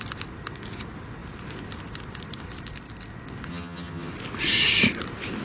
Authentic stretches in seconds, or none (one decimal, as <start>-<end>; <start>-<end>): 0.0-3.5; 4.1-5.4